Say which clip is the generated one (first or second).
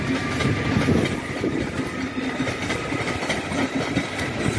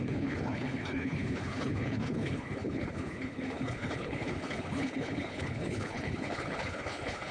second